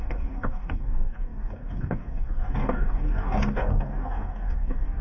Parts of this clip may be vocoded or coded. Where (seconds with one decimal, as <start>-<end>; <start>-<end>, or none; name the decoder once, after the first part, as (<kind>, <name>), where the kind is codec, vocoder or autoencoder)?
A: 0.0-5.0 (codec, DAC)